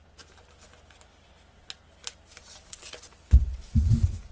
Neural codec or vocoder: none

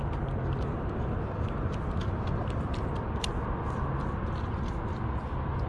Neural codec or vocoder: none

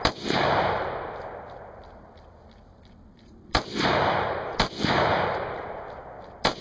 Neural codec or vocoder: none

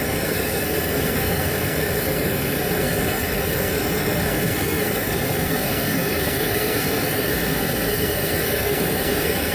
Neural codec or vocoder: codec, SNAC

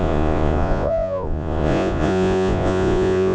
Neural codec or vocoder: vocoder, Vocos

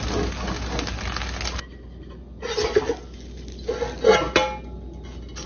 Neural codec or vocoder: none